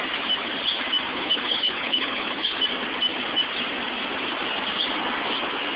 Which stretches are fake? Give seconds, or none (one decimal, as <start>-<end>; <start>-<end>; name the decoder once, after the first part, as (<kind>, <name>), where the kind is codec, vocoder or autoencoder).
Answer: 1.1-2.6 (codec, HILCodec)